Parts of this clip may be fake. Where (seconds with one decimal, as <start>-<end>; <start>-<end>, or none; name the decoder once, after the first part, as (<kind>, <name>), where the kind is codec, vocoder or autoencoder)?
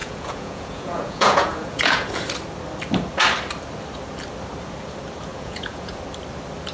0.0-2.1 (vocoder, Vocos); 5.3-6.0